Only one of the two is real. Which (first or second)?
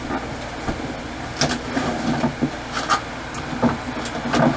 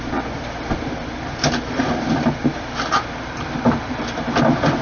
first